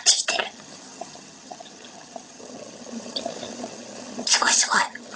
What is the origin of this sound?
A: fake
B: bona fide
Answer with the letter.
A